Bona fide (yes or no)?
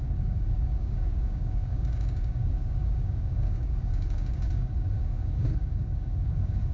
no